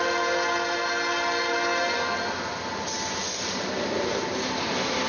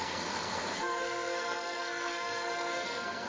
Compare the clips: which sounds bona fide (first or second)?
first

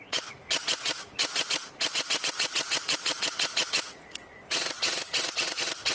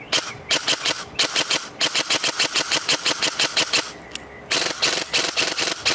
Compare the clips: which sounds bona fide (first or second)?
second